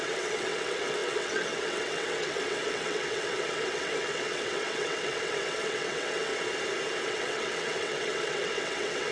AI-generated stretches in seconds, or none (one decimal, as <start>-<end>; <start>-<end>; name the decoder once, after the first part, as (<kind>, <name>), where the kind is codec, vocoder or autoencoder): 0.0-6.3 (vocoder, WaveNeXt); 7.0-9.1